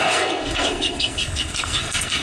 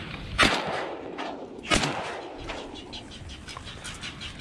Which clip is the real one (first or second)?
second